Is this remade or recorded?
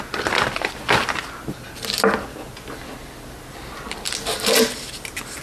recorded